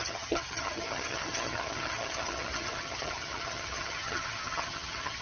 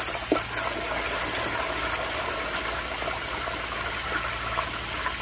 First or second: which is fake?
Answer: first